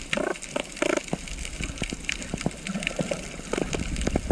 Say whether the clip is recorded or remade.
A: recorded